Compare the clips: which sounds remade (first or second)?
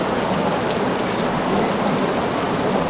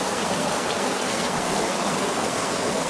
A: second